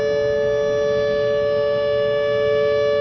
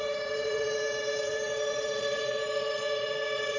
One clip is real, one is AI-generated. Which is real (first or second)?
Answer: first